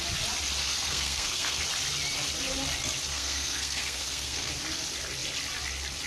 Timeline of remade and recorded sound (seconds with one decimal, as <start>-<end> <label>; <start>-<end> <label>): 0.0-0.6 recorded; 0.6-1.6 remade; 1.6-3.1 recorded; 3.1-4.5 remade; 4.5-6.1 recorded

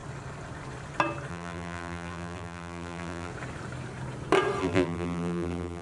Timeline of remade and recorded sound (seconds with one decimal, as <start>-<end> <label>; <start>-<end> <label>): 0.0-1.3 recorded; 1.3-3.3 remade; 3.3-4.6 recorded; 4.6-5.8 remade

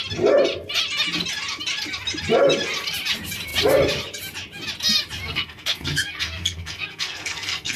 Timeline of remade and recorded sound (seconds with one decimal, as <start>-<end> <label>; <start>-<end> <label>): 0.0-5.2 recorded; 5.2-7.8 remade

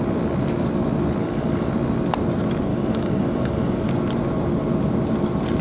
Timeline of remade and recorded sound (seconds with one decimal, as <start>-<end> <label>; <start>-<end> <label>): 0.0-1.2 recorded; 1.2-1.7 remade; 1.7-2.7 recorded; 2.7-3.9 remade; 3.9-5.6 recorded

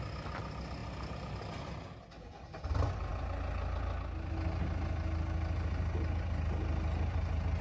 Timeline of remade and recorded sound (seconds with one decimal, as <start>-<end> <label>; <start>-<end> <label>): 0.0-7.6 recorded

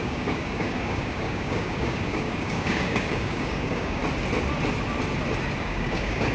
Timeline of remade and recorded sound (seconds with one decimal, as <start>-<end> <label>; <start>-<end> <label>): 0.0-4.0 remade; 4.0-5.6 recorded; 5.6-6.3 remade